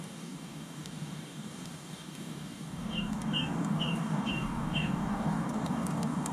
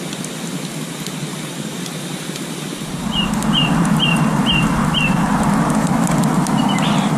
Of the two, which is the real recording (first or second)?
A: second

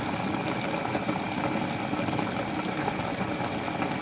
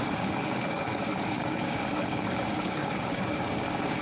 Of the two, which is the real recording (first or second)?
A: first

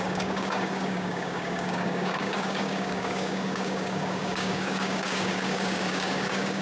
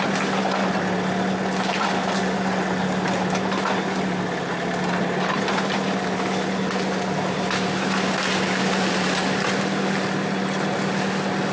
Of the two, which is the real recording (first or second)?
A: second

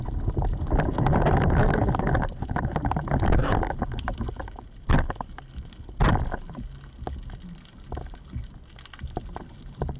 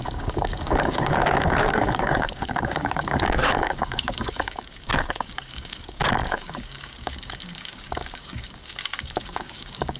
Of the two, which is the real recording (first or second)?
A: first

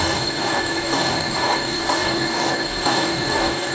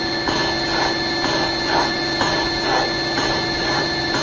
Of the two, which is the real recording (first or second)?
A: second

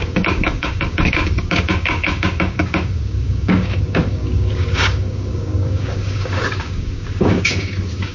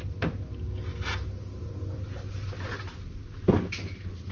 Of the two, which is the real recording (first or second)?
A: second